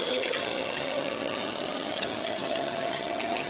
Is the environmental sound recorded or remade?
remade